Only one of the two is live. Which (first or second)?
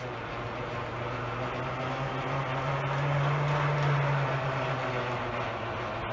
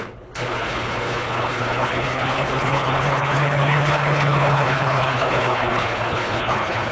first